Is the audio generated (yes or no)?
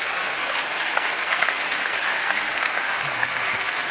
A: yes